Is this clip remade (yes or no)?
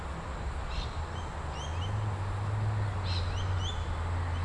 no